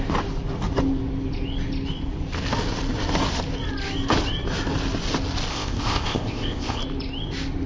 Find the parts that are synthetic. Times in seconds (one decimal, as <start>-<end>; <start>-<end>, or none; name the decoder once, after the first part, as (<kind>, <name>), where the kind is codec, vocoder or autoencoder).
5.5-6.8 (codec, ZipCodec)